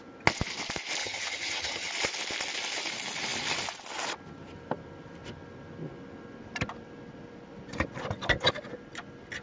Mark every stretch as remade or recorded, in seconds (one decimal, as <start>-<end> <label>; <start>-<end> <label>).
0.0-1.0 recorded; 1.0-1.9 remade; 1.9-9.4 recorded